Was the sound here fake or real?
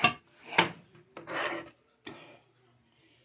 real